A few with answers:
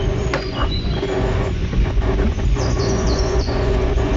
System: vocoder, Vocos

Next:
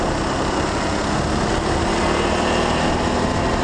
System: none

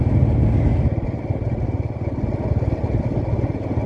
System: none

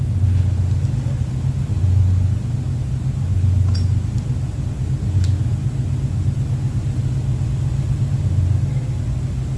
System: none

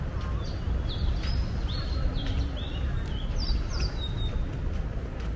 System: none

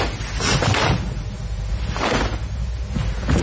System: none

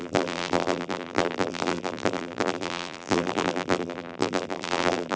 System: vocoder, BigVGAN v2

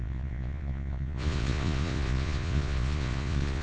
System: vocoder, Vocos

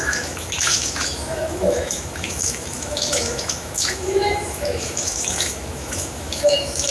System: autoencoder, DAC-VAE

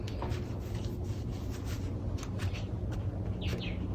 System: none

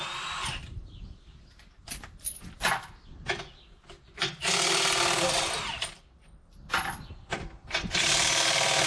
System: vocoder, BigVGAN v2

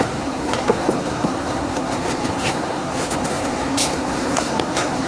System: codec, SNAC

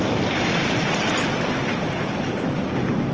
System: none